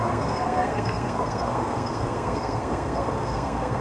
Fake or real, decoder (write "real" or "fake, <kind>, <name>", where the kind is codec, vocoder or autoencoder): fake, codec, SNAC